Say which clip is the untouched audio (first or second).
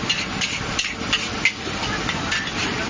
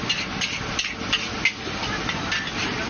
second